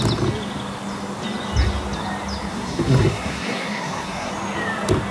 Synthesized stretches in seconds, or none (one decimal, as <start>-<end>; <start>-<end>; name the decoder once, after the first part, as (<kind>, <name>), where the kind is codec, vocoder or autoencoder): 2.5-4.3 (codec, SNAC)